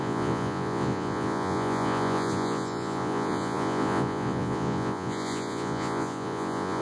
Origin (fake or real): fake